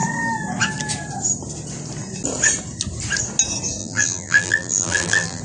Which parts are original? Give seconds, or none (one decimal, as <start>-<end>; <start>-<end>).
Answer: 0.0-3.8

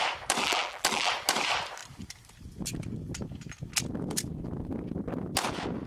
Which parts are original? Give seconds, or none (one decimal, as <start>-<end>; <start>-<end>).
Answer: 0.0-0.4; 1.1-5.9